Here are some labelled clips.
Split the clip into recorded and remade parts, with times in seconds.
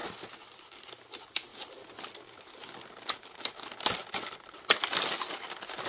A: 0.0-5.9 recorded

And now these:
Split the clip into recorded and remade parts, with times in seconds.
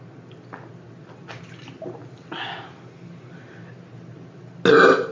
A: 0.0-5.1 recorded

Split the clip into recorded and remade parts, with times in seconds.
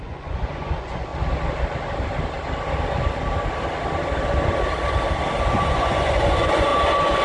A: 0.0-1.1 remade; 1.1-5.4 recorded; 5.4-7.2 remade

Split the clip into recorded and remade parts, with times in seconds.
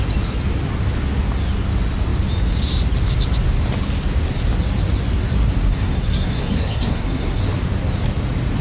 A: 0.0-5.7 recorded; 5.7-7.4 remade; 7.4-8.6 recorded